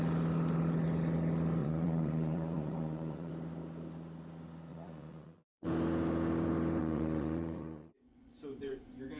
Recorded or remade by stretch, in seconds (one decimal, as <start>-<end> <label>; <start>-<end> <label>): 0.0-1.6 recorded; 1.6-3.3 remade; 3.3-4.7 recorded; 4.7-5.7 remade; 5.7-6.8 recorded; 6.8-8.7 remade; 8.7-9.2 recorded